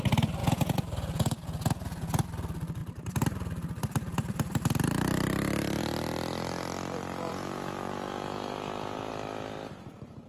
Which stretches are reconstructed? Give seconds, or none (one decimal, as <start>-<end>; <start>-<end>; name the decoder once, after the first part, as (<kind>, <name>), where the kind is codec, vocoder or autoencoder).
0.4-2.2 (vocoder, Vocos); 7.3-9.1